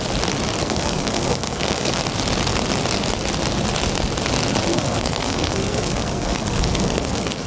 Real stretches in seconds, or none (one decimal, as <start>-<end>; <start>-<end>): 0.0-0.6; 2.0-4.7